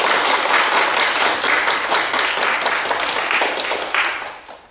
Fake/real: real